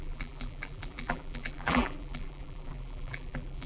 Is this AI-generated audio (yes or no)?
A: yes